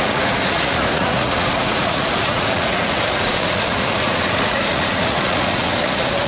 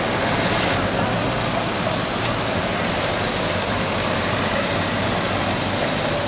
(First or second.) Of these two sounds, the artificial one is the first